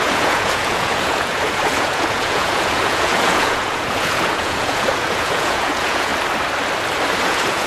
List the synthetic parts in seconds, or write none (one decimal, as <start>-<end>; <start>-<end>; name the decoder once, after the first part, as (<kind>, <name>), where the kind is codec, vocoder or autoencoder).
0.0-6.1 (vocoder, Vocos); 7.2-7.7